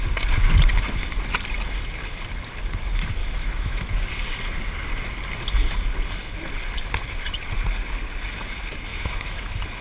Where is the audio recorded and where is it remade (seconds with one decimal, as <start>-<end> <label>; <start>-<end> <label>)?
0.0-3.2 recorded; 3.2-4.1 remade; 4.1-8.9 recorded; 8.9-9.8 remade